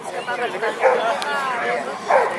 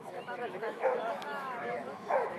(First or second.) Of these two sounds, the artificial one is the second